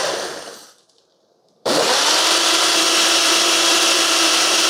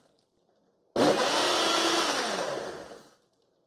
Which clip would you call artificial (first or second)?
first